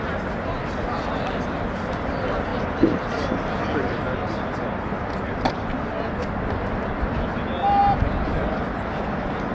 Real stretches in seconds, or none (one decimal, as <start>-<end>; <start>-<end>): 0.0-9.5